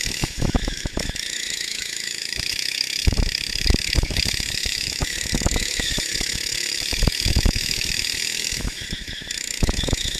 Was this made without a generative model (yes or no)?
no